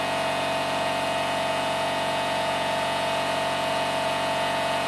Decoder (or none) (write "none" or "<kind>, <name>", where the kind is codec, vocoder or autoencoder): vocoder, Vocos